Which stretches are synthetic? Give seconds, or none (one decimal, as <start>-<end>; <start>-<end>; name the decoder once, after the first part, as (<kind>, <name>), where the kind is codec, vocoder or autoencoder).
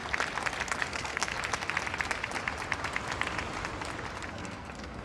0.8-1.3 (codec, SNAC); 4.3-5.0